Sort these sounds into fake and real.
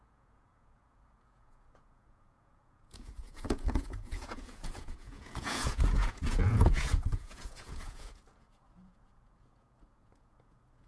fake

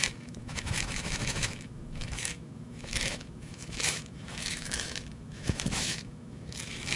fake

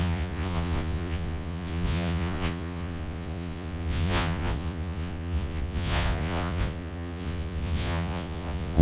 fake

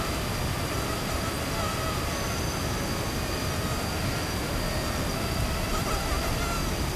real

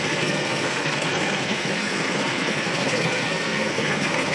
fake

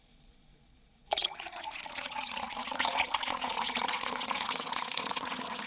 fake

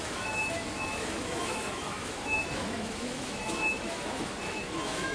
fake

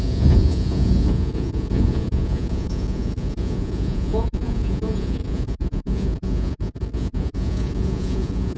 fake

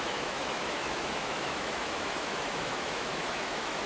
fake